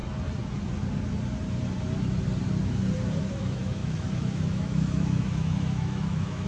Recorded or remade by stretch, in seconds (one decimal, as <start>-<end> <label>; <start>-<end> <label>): 0.0-3.2 recorded; 3.2-6.5 remade